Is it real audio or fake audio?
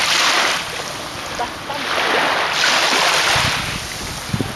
real